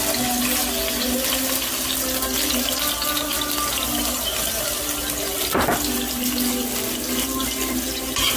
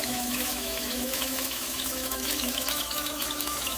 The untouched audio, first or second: first